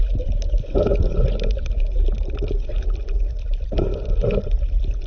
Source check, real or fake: real